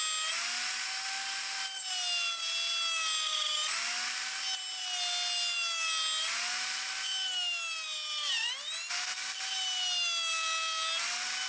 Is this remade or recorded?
recorded